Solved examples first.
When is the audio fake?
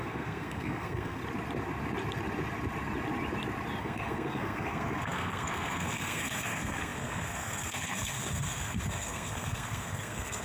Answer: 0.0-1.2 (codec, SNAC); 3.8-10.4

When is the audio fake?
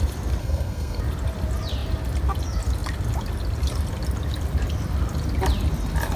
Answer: 0.4-1.0 (codec, SNAC)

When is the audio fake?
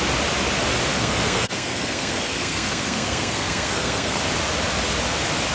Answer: 0.9-4.2 (codec, SNAC)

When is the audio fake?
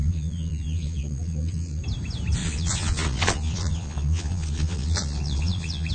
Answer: 0.0-1.8 (vocoder, Vocos); 2.4-5.9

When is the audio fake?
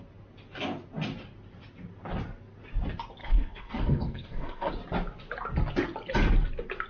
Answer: 3.2-4.7 (codec, SNAC)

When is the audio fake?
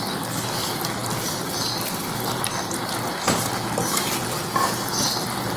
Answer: 1.0-4.2 (vocoder, BigVGAN v2)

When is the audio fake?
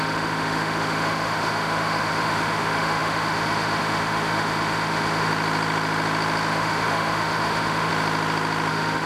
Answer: 0.0-5.3 (autoencoder, DAC-VAE); 6.5-7.9; 8.7-9.1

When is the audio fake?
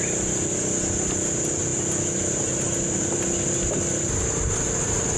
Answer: none